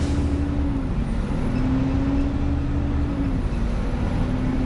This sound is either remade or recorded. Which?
recorded